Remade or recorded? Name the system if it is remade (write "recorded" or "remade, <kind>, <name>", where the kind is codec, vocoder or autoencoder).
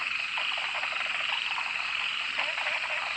recorded